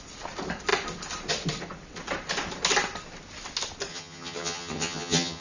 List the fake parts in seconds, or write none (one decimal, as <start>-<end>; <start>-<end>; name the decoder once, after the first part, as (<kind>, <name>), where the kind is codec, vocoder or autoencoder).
3.9-5.4 (vocoder, HiFi-GAN)